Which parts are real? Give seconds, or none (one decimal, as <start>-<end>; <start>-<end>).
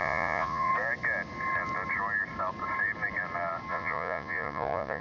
0.7-3.7